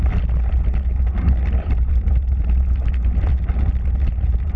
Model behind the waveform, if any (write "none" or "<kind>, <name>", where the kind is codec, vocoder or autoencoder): none